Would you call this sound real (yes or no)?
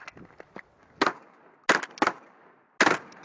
yes